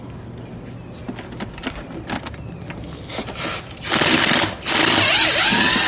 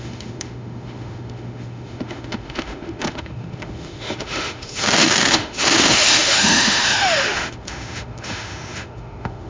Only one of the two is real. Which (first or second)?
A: first